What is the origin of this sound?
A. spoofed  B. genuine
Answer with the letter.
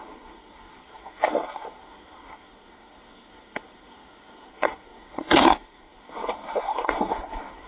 A